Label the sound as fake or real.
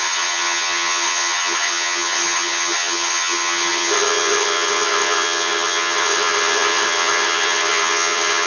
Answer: fake